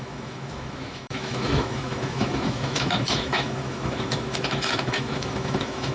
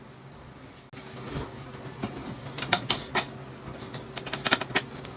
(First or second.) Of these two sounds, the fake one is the first